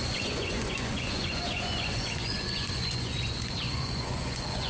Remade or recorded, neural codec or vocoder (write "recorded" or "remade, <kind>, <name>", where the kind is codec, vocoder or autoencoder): remade, vocoder, Vocos